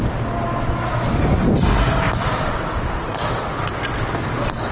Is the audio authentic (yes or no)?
yes